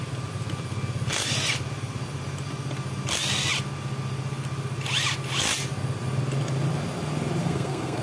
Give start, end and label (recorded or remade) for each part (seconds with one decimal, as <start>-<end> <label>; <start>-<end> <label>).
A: 0.0-7.4 recorded; 7.4-8.0 remade

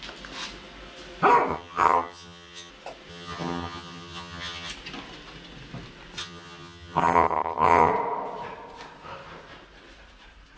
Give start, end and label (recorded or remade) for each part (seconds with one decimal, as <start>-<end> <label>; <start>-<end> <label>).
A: 0.0-1.5 recorded; 1.5-2.7 remade; 2.7-3.1 recorded; 3.1-4.7 remade; 4.7-6.2 recorded; 6.2-7.9 remade; 7.9-10.6 recorded

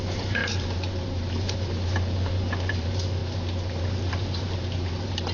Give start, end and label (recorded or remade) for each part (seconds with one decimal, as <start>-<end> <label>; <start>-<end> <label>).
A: 0.0-3.2 remade; 3.2-3.8 recorded; 3.8-5.3 remade

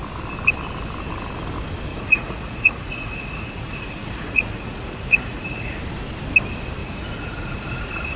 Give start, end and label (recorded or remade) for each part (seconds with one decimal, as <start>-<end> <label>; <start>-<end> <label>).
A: 0.0-1.9 recorded; 1.9-5.8 remade; 5.8-6.8 recorded; 6.8-8.2 remade

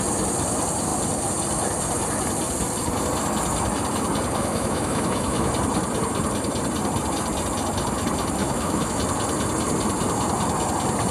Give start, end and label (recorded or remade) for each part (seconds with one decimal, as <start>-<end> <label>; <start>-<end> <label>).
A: 0.0-4.4 recorded; 4.4-5.5 remade; 5.5-8.4 recorded; 8.4-9.0 remade; 9.0-11.1 recorded